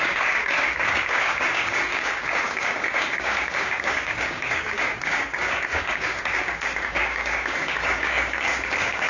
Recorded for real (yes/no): no